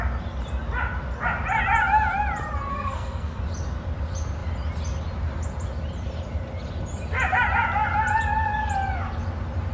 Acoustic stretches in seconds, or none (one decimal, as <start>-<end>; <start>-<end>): 0.0-2.7; 3.4-9.7